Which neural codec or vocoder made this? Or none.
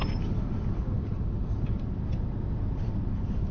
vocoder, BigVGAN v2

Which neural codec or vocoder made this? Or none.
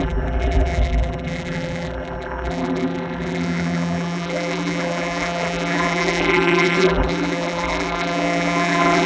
vocoder, BigVGAN v2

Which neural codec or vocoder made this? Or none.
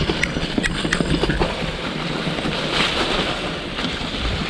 vocoder, BigVGAN v2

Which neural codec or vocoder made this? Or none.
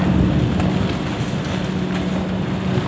none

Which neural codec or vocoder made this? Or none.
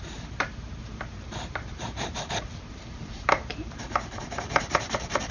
vocoder, BigVGAN v2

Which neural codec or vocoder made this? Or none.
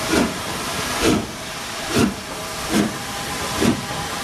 vocoder, BigVGAN v2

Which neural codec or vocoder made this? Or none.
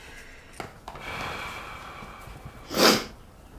none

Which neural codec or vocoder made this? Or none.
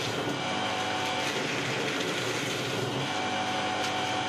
none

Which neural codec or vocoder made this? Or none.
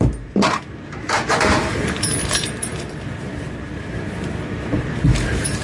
vocoder, BigVGAN v2